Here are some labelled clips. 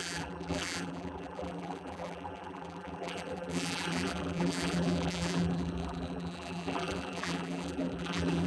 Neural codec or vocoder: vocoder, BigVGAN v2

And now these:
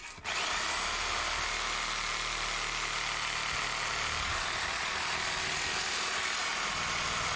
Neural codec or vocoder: none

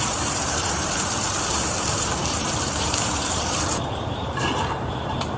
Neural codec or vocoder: vocoder, BigVGAN v2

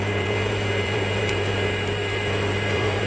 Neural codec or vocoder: vocoder, BigVGAN v2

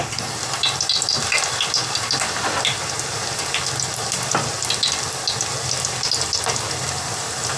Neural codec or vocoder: none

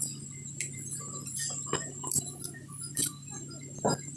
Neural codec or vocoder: vocoder, BigVGAN v2